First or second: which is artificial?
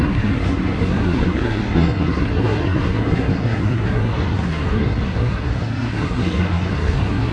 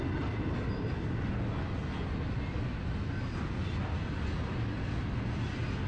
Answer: first